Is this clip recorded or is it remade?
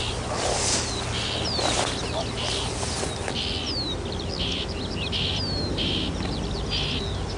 recorded